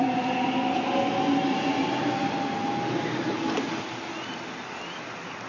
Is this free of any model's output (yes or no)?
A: yes